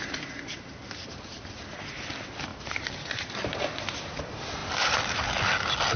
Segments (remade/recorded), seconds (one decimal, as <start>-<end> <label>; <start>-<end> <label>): 0.0-2.5 recorded; 2.5-3.2 remade; 3.2-6.0 recorded